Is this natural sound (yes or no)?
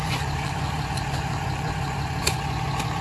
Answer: no